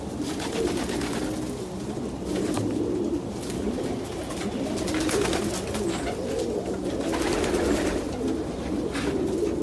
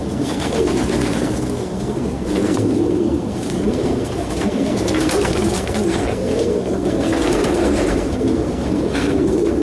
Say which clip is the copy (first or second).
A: second